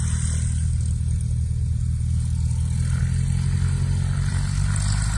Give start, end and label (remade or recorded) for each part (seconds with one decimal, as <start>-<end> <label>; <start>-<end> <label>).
0.0-5.2 recorded